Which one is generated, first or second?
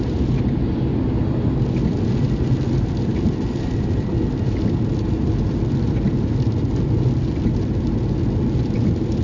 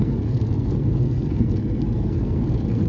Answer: second